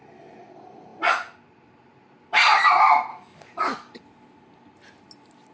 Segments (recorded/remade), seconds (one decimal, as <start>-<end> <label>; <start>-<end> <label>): 0.0-3.1 recorded; 3.1-4.0 remade; 4.0-5.5 recorded